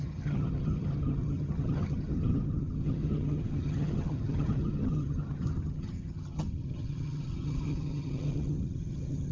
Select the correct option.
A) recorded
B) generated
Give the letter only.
B